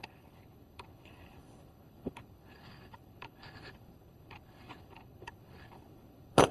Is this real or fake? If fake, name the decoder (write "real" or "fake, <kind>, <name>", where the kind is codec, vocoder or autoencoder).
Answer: fake, codec, HILCodec